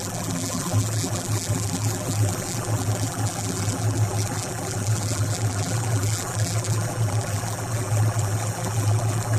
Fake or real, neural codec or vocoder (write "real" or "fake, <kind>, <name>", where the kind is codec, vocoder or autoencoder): fake, vocoder, BigVGAN v2